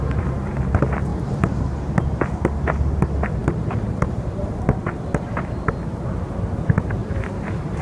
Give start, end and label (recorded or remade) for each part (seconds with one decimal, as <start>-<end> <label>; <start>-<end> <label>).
0.0-1.1 recorded; 1.1-1.6 remade; 1.6-3.4 recorded; 3.4-4.5 remade; 4.5-7.0 recorded; 7.0-7.8 remade